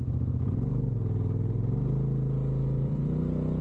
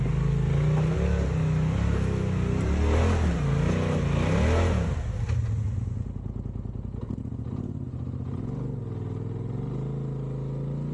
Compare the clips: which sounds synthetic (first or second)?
first